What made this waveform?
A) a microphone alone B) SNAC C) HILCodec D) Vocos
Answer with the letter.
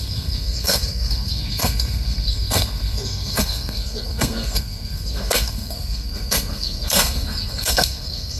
B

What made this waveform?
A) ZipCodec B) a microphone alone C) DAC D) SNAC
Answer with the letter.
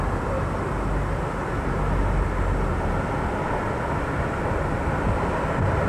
B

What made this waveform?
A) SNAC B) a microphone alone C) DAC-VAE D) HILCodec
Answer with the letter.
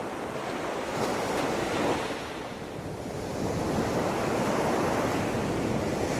B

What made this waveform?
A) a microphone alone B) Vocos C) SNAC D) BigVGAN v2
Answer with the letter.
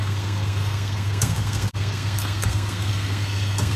C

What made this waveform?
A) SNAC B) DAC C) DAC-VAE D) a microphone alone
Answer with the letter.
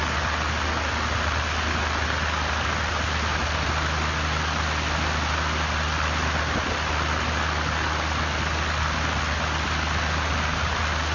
D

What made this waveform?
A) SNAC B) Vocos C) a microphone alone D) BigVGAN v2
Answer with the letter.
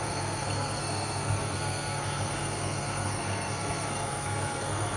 A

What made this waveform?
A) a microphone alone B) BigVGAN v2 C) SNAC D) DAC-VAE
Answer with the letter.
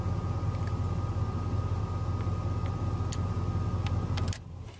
A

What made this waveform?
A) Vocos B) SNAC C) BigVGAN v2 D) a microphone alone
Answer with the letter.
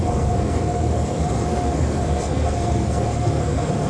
B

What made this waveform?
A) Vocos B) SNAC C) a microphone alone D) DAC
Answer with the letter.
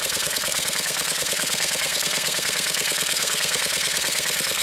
B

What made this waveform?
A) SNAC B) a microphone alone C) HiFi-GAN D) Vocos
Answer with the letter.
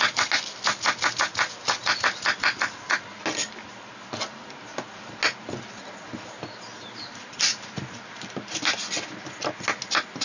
B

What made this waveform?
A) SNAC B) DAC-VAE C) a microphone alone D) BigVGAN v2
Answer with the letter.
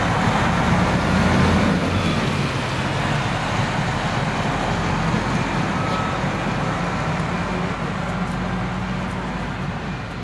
C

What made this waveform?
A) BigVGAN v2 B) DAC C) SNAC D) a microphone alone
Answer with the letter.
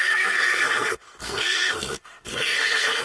C